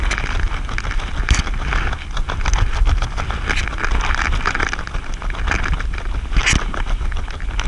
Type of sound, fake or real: real